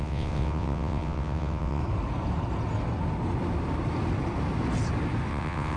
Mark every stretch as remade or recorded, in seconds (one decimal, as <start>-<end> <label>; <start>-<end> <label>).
0.0-1.8 remade; 1.8-5.3 recorded; 5.3-5.8 remade